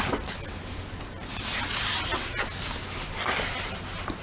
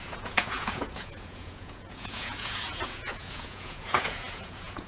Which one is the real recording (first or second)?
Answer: first